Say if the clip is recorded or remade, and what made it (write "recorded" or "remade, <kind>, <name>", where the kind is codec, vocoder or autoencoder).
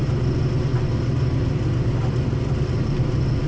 recorded